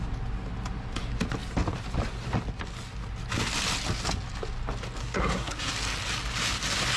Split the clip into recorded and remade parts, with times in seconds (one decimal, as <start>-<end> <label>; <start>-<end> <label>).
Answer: 0.0-5.0 recorded; 5.0-5.7 remade; 5.7-7.0 recorded